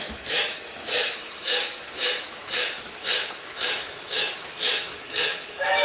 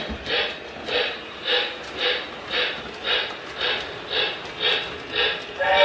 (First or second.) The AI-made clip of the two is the first